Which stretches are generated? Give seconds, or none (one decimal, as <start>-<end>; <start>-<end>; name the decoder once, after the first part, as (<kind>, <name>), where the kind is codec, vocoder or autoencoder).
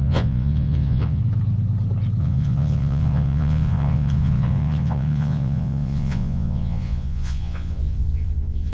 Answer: 0.0-1.2 (vocoder, Vocos); 2.2-8.7